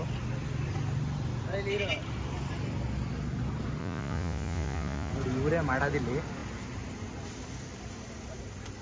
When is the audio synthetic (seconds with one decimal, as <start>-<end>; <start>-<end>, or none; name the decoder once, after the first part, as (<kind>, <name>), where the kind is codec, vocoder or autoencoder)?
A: 3.8-5.1 (vocoder, Vocos)